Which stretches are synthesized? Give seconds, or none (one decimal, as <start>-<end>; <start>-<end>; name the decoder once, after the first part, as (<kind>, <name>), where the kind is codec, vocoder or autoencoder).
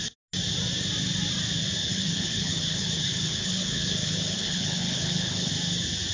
1.8-5.5 (codec, HILCodec)